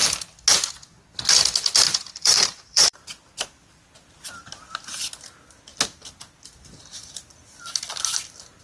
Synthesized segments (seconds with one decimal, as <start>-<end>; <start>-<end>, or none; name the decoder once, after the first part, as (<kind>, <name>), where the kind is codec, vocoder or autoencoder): 1.9-3.1 (vocoder, BigVGAN v2)